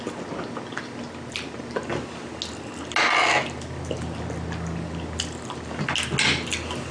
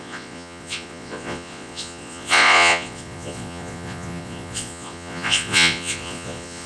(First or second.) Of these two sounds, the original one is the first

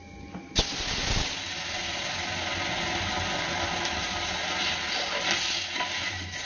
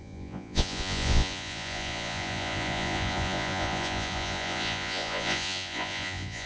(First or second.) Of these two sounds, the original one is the first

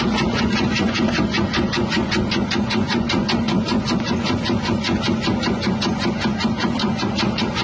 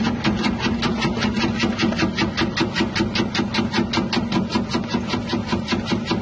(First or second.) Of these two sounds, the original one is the second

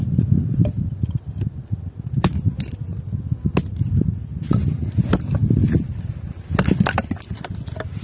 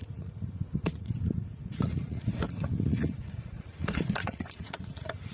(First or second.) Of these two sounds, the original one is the first